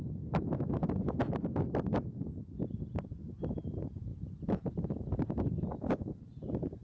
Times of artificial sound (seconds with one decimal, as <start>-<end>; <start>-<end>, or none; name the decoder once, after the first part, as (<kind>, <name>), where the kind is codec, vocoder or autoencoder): none